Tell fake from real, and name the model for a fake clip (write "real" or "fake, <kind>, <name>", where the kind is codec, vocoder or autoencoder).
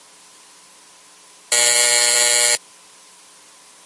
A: real